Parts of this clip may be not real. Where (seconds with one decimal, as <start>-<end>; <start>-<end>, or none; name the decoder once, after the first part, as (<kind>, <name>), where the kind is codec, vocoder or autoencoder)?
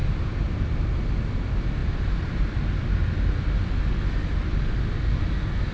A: 0.0-0.6 (vocoder, BigVGAN v2)